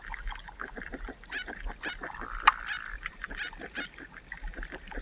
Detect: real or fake fake